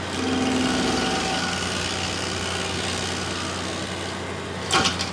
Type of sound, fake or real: real